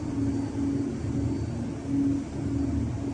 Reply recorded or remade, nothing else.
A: recorded